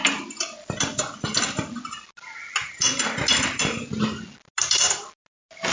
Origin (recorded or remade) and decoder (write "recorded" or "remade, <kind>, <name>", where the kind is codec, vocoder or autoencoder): recorded